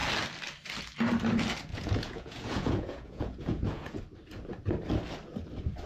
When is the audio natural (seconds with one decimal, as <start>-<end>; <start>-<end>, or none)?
0.0-1.7; 4.0-5.9

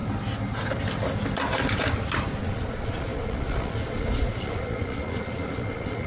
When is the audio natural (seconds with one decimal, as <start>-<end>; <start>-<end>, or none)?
0.0-2.4

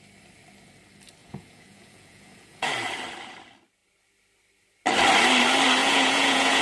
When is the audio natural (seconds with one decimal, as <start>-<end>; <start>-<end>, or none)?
0.0-1.2; 2.7-5.8

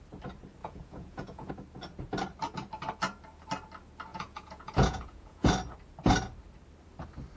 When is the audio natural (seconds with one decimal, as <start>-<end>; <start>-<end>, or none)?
0.0-0.6; 1.5-4.1; 5.5-7.4

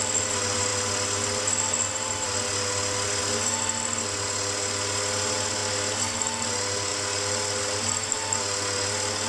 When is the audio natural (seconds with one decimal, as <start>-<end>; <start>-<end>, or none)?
0.0-9.3

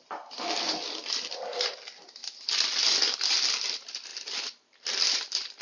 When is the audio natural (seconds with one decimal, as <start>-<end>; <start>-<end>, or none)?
0.0-5.6